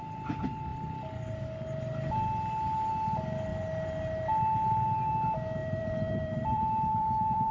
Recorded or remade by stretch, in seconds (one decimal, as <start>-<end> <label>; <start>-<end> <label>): 0.0-5.6 recorded; 5.6-7.5 remade